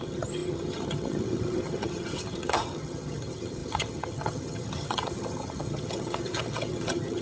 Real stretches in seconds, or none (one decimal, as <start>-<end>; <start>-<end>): none